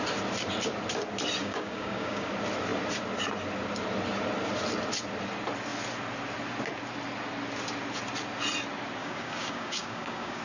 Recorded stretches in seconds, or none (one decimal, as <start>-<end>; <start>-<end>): 0.0-1.4; 2.3-9.0